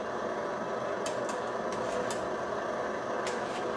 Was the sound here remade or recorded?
recorded